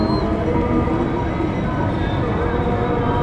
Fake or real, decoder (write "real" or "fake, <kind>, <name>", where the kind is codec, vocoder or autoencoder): real